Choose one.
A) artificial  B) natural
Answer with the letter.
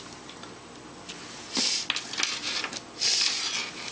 B